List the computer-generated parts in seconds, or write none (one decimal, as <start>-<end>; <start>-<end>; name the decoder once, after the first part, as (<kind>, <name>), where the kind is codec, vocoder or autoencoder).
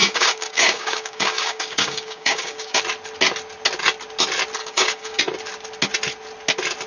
0.0-2.8 (codec, DAC); 4.6-5.2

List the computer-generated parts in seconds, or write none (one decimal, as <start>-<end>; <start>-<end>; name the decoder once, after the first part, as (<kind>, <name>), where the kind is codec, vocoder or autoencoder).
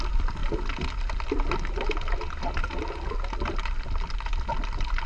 none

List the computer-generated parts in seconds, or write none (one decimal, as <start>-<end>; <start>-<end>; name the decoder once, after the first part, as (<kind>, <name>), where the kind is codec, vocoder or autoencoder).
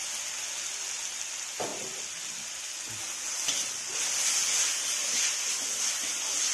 none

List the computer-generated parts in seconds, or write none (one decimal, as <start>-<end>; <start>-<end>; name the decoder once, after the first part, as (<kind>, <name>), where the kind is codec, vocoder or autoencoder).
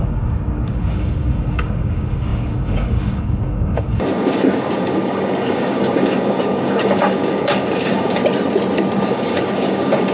0.0-8.2 (codec, DAC); 9.0-10.1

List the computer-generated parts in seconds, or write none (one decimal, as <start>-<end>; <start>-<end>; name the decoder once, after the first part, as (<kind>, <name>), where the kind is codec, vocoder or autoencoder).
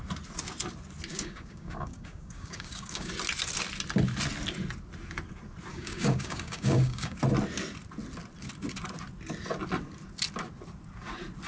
1.1-3.1 (codec, DAC); 5.7-7.2